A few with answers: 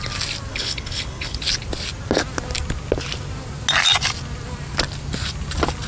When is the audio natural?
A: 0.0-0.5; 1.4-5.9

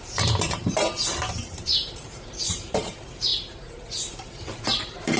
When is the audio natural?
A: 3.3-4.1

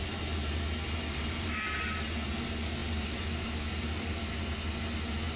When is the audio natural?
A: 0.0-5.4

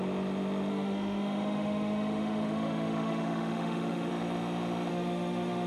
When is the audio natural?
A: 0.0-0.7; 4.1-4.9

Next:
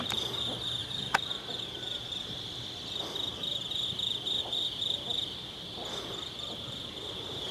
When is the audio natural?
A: 0.0-0.8; 1.4-7.5

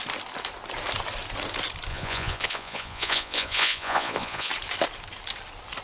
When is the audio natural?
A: 0.0-1.9; 4.5-5.8